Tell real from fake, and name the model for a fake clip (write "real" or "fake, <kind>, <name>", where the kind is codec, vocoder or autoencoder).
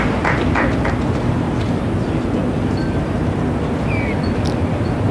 real